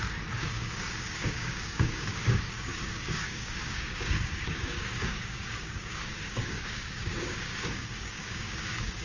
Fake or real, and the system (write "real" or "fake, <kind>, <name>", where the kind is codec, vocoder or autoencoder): fake, codec, DAC